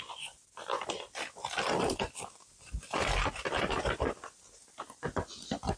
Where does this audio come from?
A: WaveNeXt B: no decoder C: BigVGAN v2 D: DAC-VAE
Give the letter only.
B